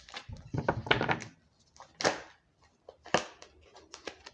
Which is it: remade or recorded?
recorded